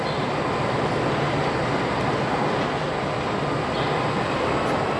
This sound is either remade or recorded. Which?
recorded